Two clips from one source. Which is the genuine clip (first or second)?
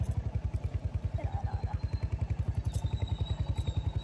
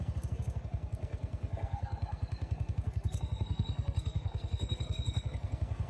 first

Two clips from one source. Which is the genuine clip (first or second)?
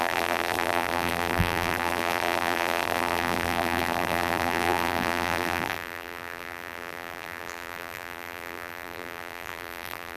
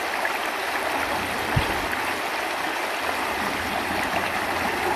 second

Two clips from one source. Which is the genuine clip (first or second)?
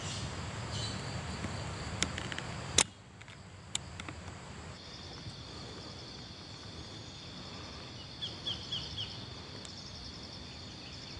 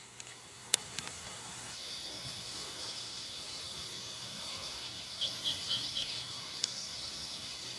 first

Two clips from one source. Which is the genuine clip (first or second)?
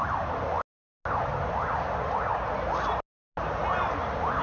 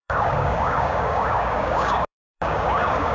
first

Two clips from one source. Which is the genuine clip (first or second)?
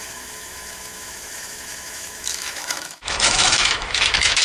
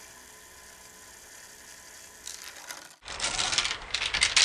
second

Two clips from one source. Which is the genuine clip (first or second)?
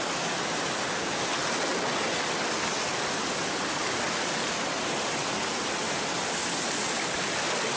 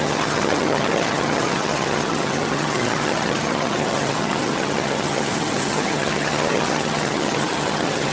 first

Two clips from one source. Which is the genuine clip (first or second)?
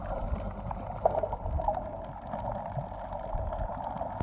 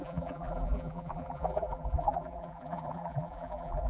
first